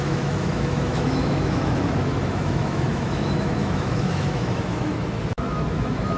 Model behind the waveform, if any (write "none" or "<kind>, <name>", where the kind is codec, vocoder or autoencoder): autoencoder, DAC-VAE